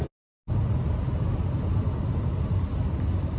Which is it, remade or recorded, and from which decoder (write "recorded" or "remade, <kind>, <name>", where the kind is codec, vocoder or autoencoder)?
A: recorded